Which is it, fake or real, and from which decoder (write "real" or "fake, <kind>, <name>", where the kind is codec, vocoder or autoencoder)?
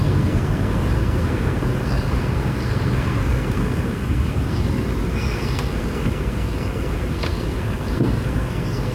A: fake, codec, SNAC